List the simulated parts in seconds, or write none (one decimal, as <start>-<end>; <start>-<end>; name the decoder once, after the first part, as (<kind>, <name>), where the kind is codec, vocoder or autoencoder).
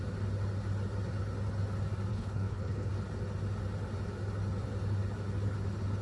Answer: 2.1-2.9 (codec, HILCodec)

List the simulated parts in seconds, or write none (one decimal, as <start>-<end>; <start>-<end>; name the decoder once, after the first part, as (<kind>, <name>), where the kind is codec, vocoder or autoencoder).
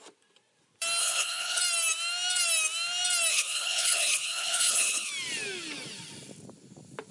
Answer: 1.0-1.6 (codec, HILCodec); 3.3-5.1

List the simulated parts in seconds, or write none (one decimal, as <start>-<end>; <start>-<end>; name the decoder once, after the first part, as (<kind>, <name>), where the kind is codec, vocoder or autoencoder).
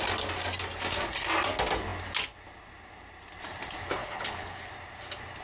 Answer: 4.0-4.7 (codec, HILCodec)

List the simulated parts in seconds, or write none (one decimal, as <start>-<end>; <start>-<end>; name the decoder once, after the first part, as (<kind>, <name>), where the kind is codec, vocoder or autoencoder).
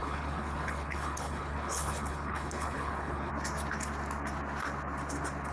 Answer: 0.0-3.3 (codec, HILCodec)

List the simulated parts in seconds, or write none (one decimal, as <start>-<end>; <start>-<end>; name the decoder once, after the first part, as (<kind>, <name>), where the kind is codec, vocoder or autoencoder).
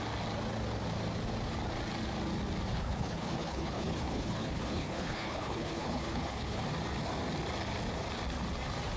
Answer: 2.7-6.6 (codec, HILCodec)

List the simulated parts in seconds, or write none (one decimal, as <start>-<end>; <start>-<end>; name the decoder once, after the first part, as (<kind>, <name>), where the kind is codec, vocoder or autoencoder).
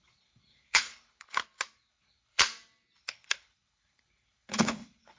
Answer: 0.0-1.4 (codec, HILCodec); 1.9-2.4; 3.0-5.2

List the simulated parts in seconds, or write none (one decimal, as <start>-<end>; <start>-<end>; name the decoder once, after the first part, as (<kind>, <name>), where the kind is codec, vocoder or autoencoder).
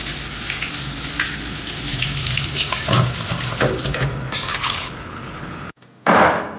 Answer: 4.5-5.4 (codec, HILCodec)